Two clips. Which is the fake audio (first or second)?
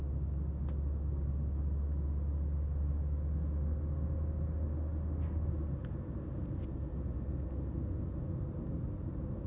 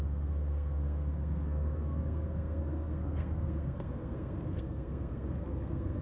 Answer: second